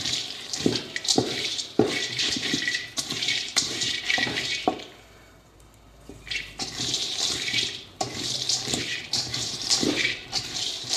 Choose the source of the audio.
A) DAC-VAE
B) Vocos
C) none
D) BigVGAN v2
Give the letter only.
D